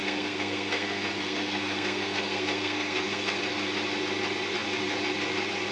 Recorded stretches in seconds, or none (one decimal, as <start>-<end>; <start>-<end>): 3.4-5.7